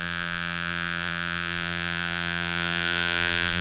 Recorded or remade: remade